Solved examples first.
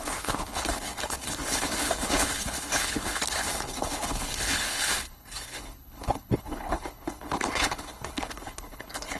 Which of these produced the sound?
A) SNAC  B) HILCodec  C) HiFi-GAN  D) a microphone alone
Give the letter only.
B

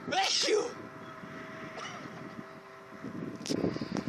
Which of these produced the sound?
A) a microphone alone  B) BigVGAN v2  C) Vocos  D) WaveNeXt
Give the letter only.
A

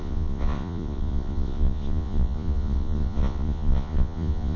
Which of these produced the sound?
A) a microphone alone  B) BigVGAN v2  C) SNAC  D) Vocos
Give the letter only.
D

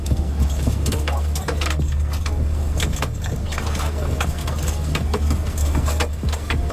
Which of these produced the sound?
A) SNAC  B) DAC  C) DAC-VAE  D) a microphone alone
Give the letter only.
A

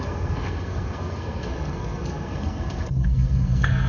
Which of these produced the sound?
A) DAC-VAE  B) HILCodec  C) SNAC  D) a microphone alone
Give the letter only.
C